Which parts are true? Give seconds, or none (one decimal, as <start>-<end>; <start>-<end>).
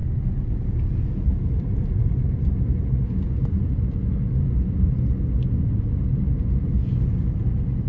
2.4-7.9